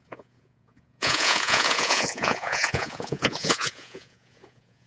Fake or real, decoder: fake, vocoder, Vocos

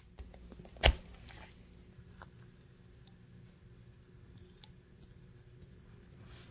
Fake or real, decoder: real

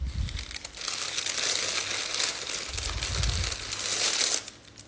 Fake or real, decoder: real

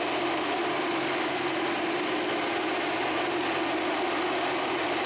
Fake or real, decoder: real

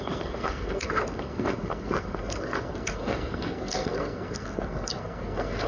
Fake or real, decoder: fake, codec, SNAC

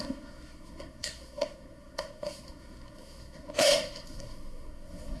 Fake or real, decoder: fake, codec, SNAC